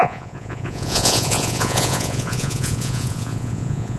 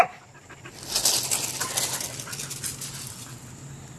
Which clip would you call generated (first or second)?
first